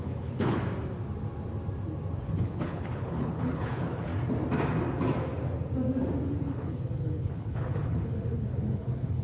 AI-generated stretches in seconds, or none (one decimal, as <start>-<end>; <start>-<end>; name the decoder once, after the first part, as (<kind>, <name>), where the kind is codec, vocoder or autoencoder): 0.0-0.6 (codec, HILCodec); 2.2-4.1; 6.4-9.2

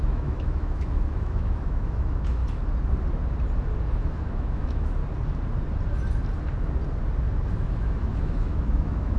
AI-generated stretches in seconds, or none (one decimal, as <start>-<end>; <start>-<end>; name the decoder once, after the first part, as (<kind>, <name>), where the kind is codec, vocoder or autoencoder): 0.0-2.4 (autoencoder, DAC-VAE); 4.0-5.0; 7.5-9.2

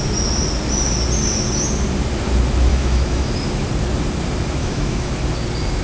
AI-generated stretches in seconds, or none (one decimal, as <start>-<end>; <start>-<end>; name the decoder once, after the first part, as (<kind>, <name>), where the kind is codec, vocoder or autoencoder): 2.7-3.3 (autoencoder, DAC-VAE); 4.6-5.1

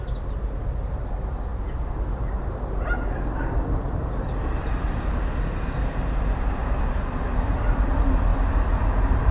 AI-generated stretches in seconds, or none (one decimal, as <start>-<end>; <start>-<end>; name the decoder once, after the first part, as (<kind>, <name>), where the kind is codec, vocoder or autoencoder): none